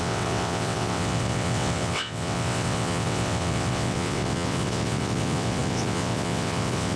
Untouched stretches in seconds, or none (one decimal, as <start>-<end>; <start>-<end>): none